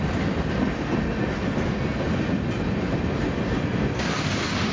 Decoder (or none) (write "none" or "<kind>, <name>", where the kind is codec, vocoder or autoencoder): none